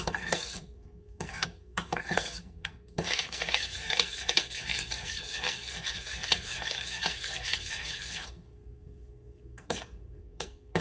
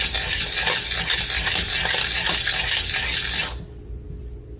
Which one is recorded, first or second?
second